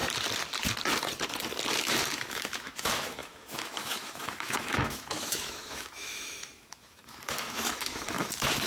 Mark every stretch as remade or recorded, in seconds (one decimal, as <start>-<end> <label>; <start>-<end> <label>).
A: 0.0-1.8 recorded; 1.8-8.7 remade